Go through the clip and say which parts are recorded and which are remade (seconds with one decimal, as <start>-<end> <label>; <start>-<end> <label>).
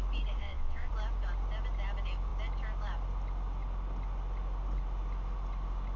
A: 0.0-0.4 recorded; 0.4-0.9 remade; 0.9-6.0 recorded